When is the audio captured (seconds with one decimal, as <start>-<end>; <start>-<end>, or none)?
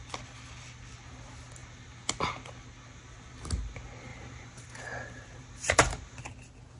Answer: 0.0-4.1; 6.2-6.8